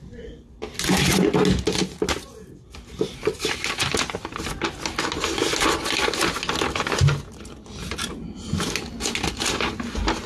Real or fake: real